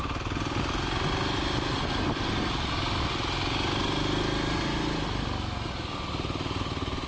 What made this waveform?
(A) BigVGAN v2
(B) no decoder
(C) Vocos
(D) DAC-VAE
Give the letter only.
B